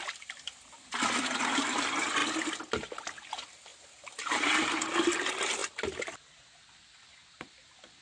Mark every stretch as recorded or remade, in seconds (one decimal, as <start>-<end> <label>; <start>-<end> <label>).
0.0-8.0 recorded